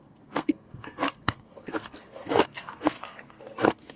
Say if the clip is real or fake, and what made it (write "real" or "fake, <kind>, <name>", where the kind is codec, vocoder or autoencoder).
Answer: fake, codec, SNAC